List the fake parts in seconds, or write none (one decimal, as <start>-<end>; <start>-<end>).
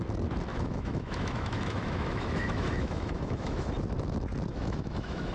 0.5-3.7; 4.5-5.3